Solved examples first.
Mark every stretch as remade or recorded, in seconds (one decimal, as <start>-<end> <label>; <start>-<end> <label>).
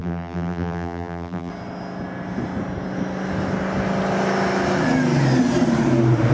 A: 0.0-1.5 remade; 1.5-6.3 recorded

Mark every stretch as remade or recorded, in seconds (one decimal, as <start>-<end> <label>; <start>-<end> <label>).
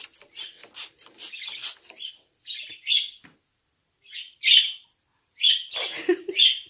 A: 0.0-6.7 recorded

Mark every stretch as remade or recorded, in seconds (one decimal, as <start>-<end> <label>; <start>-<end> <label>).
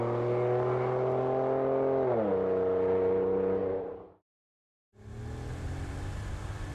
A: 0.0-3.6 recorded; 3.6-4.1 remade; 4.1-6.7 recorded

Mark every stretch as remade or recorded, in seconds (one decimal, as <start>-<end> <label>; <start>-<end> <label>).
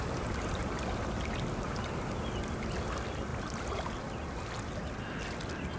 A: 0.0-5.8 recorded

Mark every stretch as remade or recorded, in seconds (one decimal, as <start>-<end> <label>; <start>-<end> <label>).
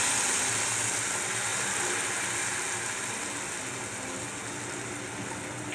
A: 0.0-5.7 recorded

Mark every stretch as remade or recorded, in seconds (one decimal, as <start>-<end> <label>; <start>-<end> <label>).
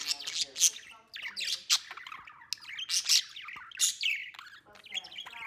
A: 0.0-5.5 recorded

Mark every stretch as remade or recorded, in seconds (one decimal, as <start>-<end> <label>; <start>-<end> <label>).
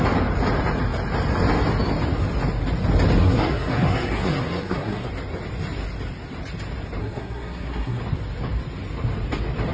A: 0.0-3.2 recorded; 3.2-5.1 remade; 5.1-7.0 recorded; 7.0-8.0 remade; 8.0-9.7 recorded